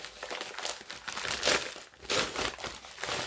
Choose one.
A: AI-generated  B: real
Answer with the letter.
B